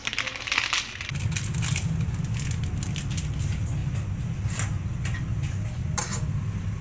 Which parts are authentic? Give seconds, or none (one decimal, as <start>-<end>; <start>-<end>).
0.0-6.8